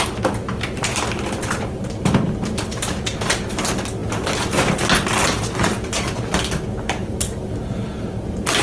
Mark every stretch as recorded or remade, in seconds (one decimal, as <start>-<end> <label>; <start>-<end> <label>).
0.0-7.0 recorded; 7.0-7.7 remade; 7.7-8.6 recorded